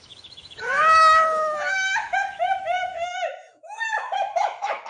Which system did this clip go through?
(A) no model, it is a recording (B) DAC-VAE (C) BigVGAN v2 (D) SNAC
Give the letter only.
B